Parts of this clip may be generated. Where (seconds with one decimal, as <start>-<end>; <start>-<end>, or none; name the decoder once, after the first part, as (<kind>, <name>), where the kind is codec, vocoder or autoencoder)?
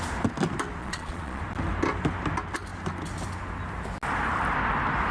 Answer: 0.8-1.4 (vocoder, Vocos)